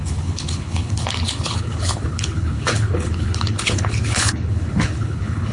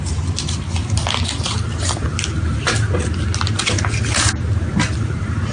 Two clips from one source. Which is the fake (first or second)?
first